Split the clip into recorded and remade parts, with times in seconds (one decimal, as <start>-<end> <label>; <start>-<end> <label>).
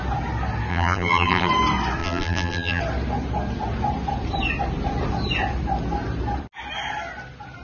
0.0-0.7 recorded; 0.7-1.5 remade; 1.5-2.0 recorded; 2.0-2.8 remade; 2.8-7.6 recorded